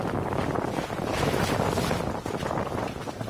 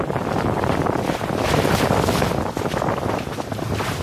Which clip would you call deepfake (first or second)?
second